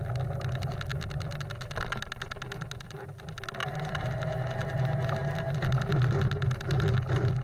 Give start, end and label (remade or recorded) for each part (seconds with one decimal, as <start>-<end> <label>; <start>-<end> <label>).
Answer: 0.0-0.9 recorded; 0.9-1.8 remade; 1.8-3.6 recorded; 3.6-4.2 remade; 4.2-7.4 recorded